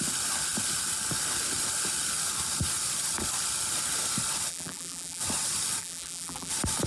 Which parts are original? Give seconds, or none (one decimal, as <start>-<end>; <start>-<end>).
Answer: 0.0-4.5; 5.2-5.8; 6.5-6.9

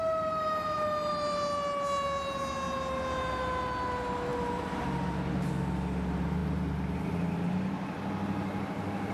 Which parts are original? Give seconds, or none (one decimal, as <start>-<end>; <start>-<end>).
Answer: 0.0-4.3; 5.5-9.1

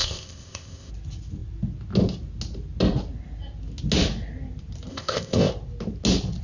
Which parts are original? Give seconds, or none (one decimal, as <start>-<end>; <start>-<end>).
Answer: 0.9-4.9; 5.5-6.4

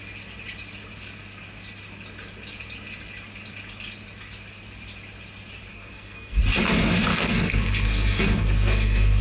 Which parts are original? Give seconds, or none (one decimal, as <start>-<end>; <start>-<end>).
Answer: 0.0-5.7; 6.4-7.1